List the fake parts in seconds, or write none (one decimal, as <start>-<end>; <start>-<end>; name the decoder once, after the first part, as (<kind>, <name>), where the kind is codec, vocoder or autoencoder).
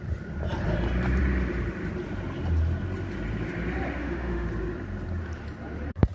4.0-4.5 (autoencoder, DAC-VAE)